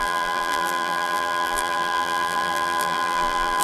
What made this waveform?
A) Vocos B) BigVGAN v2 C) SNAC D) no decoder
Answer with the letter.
B